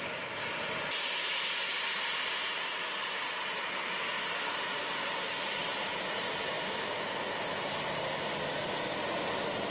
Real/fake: real